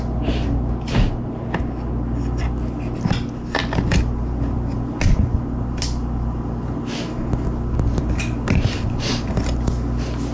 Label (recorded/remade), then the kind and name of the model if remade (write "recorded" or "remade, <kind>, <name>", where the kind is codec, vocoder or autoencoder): recorded